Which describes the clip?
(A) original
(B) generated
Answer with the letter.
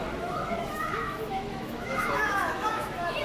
B